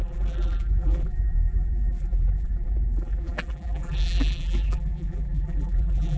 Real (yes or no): no